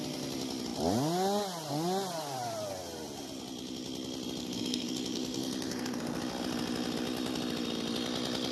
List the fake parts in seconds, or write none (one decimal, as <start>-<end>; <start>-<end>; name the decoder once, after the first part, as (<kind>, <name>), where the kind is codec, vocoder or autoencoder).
4.4-6.2 (codec, SNAC)